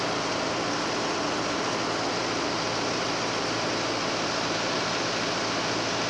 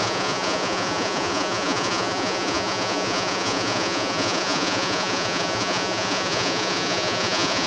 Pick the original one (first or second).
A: first